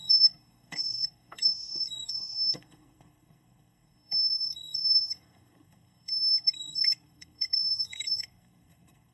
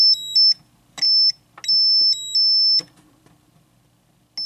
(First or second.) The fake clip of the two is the first